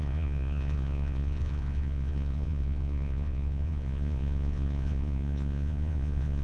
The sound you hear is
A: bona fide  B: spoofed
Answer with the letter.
B